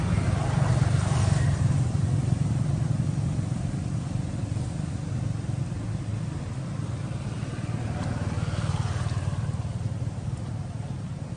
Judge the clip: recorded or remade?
recorded